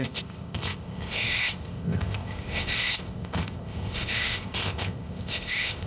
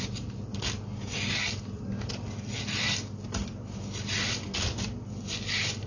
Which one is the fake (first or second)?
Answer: first